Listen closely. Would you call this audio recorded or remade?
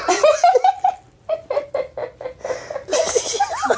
recorded